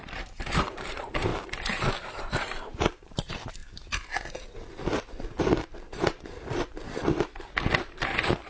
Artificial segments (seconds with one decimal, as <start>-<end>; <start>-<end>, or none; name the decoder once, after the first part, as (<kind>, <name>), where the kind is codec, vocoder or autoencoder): 0.0-1.3 (vocoder, BigVGAN v2); 2.2-3.6; 4.8-7.0; 7.8-8.5